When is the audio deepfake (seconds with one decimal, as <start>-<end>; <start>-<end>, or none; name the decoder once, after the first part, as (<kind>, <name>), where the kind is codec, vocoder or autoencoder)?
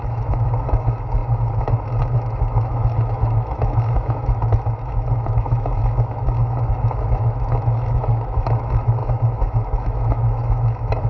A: 0.0-11.1 (autoencoder, DAC-VAE)